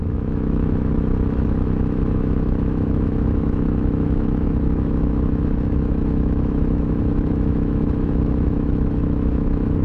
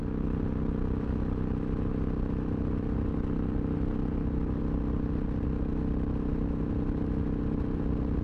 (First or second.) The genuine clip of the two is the second